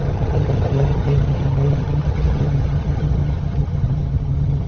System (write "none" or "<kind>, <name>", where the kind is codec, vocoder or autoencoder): vocoder, HiFi-GAN